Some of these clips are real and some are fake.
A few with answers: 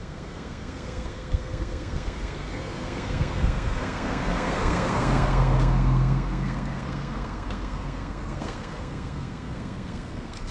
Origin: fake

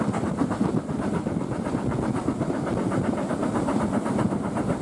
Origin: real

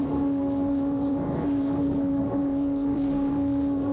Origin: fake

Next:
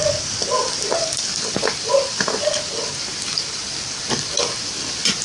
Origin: real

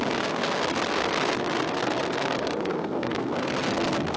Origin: fake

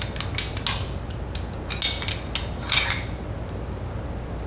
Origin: real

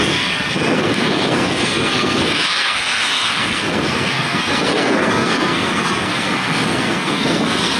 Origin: fake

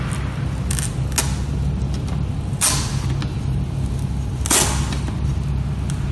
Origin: real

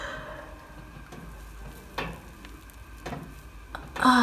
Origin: real